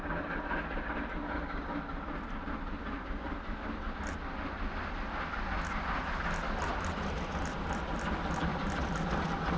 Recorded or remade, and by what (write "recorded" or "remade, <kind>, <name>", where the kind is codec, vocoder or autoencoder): recorded